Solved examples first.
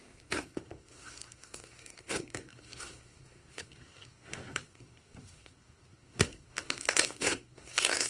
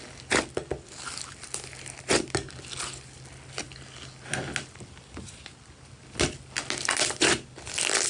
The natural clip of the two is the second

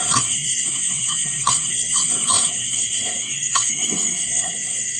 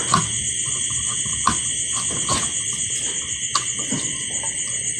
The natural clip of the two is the second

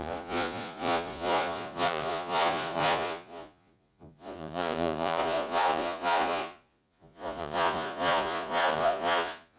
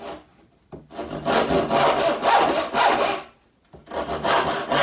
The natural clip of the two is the second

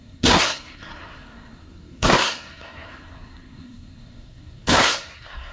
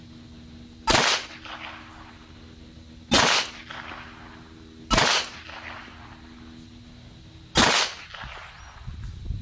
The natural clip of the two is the second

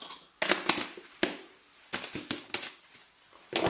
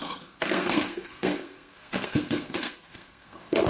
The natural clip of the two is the first